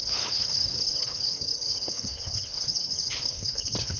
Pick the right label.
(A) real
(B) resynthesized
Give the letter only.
B